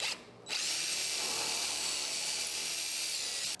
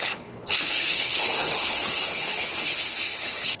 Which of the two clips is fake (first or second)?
second